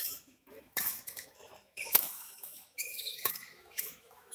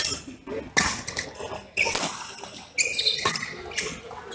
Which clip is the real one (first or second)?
second